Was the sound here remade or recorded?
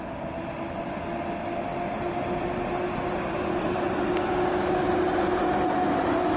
recorded